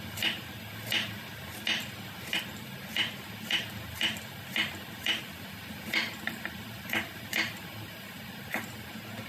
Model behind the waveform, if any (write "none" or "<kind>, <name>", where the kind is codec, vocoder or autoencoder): none